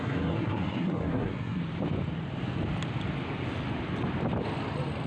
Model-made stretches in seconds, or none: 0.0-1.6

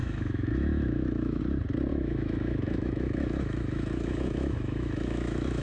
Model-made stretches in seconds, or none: 0.0-1.4; 1.9-5.6

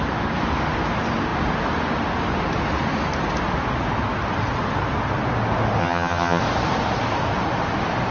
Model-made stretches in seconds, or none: 5.8-6.4

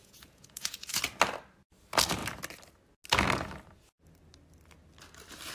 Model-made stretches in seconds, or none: 0.0-1.0